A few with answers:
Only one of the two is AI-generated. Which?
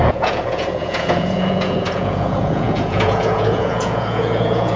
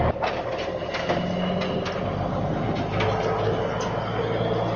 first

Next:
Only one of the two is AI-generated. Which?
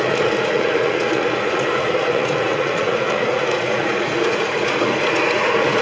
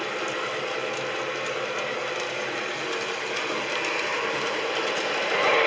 first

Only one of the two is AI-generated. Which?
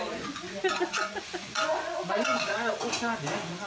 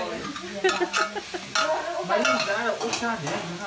first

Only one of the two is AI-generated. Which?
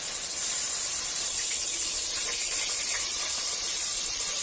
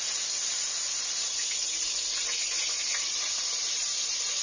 first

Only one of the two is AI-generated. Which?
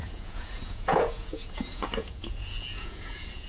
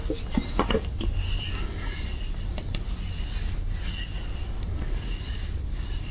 first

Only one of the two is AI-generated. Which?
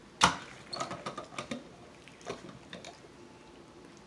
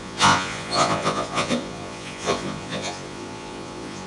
second